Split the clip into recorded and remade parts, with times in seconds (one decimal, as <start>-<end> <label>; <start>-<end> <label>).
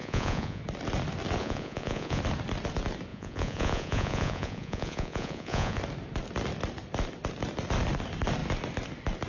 0.0-0.6 remade; 0.6-1.4 recorded; 1.4-2.2 remade; 2.2-3.1 recorded; 3.1-5.8 remade; 5.8-9.3 recorded